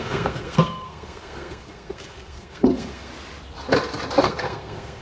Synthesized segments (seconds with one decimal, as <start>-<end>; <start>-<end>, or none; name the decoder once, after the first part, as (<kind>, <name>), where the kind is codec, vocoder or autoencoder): 0.0-3.1 (codec, SNAC); 4.2-5.0